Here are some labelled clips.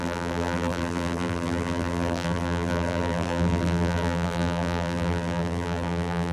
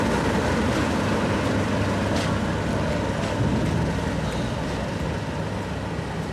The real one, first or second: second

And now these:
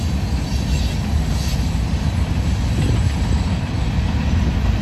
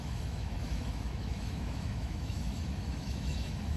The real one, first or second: first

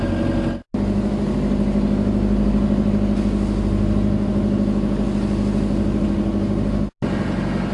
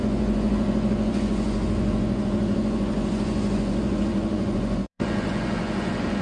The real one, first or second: first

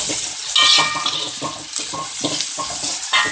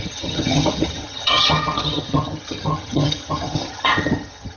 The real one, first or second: first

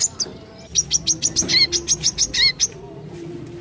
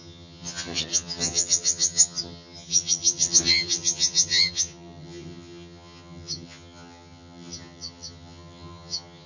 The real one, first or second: first